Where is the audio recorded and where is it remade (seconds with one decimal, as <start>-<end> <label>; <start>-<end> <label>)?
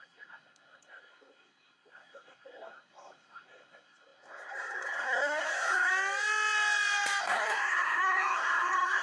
0.0-5.9 remade; 5.9-7.2 recorded; 7.2-9.0 remade